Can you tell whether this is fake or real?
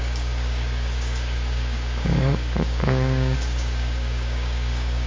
fake